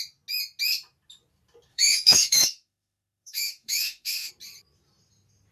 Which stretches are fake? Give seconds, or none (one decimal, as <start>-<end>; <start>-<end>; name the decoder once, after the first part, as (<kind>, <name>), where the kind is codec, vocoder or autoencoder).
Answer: 1.7-4.3 (autoencoder, DAC-VAE)